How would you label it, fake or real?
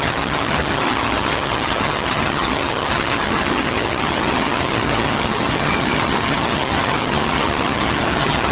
fake